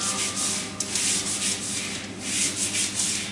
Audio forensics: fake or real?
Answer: real